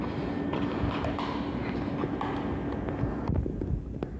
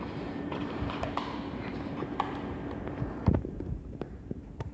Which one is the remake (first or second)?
second